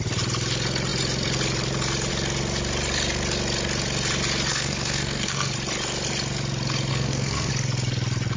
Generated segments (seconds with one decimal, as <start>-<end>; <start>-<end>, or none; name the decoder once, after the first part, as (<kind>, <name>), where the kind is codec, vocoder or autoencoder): 4.5-5.5 (codec, SNAC); 6.9-7.5

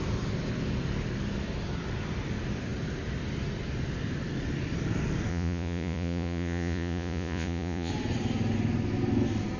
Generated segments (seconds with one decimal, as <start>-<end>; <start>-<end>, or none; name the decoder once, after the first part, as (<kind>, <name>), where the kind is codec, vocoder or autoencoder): 5.3-7.9 (vocoder, Vocos)

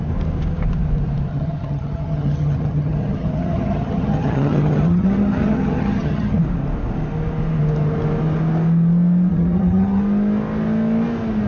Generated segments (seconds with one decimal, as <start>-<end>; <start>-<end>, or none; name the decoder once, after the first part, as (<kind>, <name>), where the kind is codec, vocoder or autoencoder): 1.3-6.4 (vocoder, HiFi-GAN); 9.3-10.0

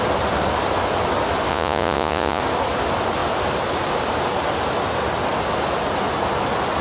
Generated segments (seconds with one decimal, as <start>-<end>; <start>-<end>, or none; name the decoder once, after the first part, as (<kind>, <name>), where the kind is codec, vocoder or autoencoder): 1.5-2.4 (vocoder, Vocos)

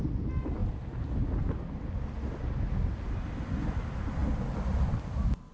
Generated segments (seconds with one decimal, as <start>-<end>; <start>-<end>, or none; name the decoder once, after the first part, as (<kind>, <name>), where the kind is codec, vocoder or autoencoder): none